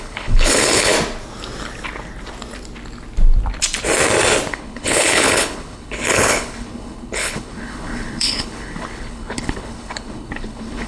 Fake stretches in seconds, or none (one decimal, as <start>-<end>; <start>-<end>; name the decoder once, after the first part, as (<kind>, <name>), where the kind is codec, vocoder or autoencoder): 0.0-0.9 (codec, HILCodec); 4.5-10.9